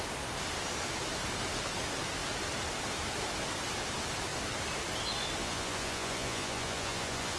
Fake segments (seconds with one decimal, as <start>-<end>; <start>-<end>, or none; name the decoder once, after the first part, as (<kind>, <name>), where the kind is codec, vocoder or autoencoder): 5.4-7.4 (vocoder, Vocos)